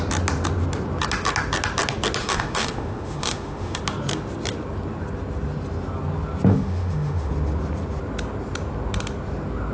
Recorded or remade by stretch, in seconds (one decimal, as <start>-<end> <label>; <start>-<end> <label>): 0.0-2.2 recorded; 2.2-3.8 remade; 3.8-6.5 recorded; 6.5-7.3 remade; 7.3-9.7 recorded